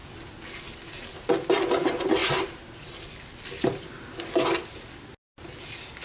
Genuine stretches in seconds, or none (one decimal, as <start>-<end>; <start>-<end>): 0.0-6.0